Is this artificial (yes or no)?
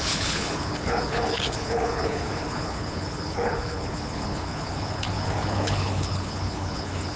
yes